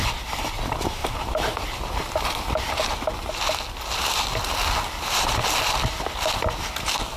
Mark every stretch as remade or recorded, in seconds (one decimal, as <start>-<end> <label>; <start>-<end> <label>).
0.0-1.0 recorded; 1.0-1.6 remade; 1.6-7.2 recorded